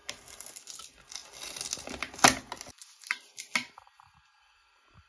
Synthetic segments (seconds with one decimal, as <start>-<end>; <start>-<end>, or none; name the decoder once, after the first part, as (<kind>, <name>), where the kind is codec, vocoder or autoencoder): 0.0-0.5 (vocoder, BigVGAN v2)